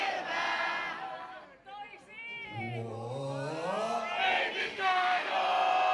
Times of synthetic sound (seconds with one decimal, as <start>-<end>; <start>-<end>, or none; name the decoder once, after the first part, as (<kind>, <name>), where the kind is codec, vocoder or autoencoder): 4.6-5.3 (autoencoder, DAC-VAE)